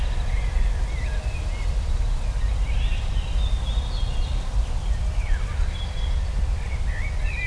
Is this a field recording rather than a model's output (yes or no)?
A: yes